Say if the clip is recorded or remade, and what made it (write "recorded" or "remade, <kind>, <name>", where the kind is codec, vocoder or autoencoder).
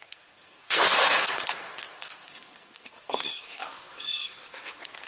remade, codec, SNAC